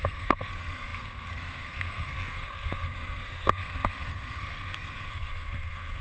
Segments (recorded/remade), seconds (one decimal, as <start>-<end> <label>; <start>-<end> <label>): 0.0-6.0 remade